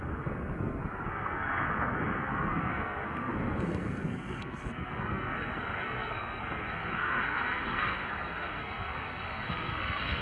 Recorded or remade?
remade